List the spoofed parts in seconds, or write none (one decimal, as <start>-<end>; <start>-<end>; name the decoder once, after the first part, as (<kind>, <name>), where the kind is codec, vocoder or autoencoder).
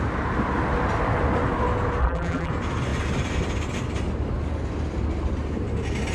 2.0-2.5 (vocoder, BigVGAN v2)